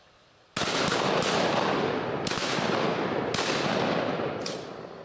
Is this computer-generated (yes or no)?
no